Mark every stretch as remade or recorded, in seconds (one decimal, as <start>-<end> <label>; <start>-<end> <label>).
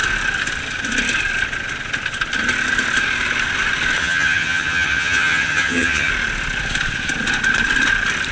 0.0-4.0 recorded; 4.0-6.1 remade; 6.1-8.3 recorded